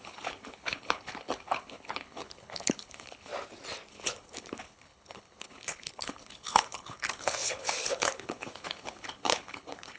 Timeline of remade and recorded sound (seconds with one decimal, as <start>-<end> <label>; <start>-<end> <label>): 0.0-3.3 remade; 3.3-3.9 recorded; 3.9-10.0 remade